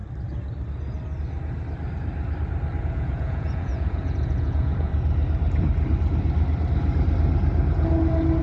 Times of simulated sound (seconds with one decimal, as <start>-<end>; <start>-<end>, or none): 2.8-4.9